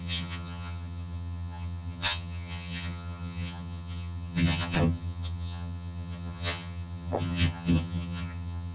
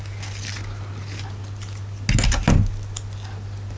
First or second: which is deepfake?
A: first